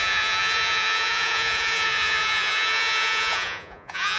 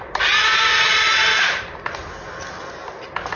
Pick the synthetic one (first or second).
first